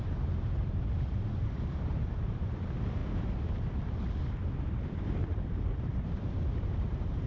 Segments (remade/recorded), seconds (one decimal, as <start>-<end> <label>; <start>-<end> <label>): 0.0-3.0 remade; 3.0-4.8 recorded; 4.8-7.3 remade